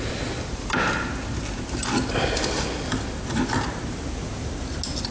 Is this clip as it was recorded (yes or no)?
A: yes